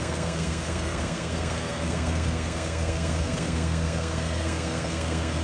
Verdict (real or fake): fake